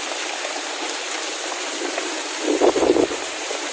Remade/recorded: remade